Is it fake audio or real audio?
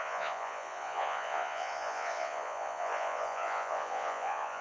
fake